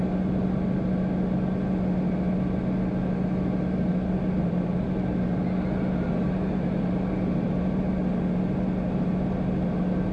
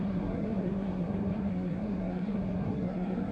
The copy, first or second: second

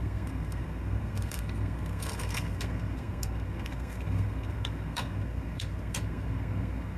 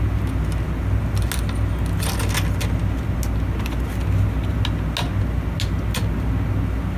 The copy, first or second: first